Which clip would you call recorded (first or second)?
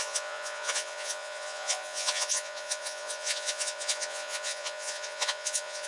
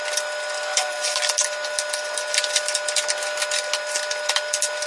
second